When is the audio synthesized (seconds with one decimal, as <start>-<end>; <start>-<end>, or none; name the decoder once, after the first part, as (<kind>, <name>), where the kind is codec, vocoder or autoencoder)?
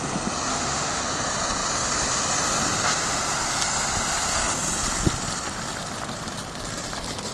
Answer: 0.5-1.0 (autoencoder, DAC-VAE)